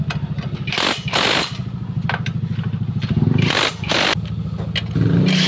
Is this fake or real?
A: real